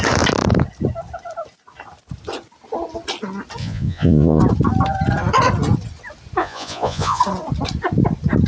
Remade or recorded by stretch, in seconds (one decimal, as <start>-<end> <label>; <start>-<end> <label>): 0.0-3.6 recorded; 3.6-4.4 remade; 4.4-6.4 recorded; 6.4-7.2 remade; 7.2-8.5 recorded

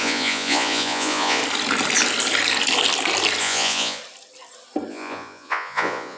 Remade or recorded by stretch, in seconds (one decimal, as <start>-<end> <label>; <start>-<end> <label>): 0.0-1.4 remade; 1.4-3.4 recorded; 3.4-4.0 remade; 4.0-4.9 recorded; 4.9-6.2 remade

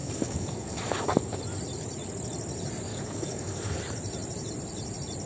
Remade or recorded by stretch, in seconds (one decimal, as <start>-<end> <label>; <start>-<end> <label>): 0.0-1.4 remade; 1.4-2.9 recorded; 2.9-3.8 remade; 3.8-5.3 recorded

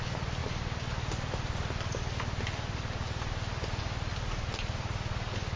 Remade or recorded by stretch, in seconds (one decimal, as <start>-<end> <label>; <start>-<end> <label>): 0.0-5.6 recorded